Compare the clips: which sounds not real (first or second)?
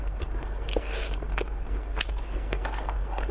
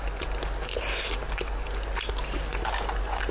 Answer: first